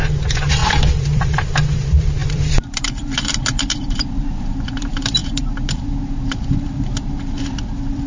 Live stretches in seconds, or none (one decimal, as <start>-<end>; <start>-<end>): none